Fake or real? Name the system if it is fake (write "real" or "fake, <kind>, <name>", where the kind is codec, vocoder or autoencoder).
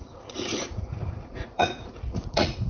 fake, vocoder, Vocos